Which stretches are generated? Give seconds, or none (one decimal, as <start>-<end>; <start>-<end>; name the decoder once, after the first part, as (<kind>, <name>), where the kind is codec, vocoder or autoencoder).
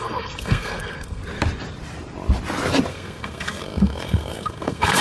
0.0-1.2 (codec, SNAC); 2.9-5.0